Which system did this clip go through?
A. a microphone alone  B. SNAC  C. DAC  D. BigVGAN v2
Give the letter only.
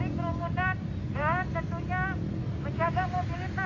A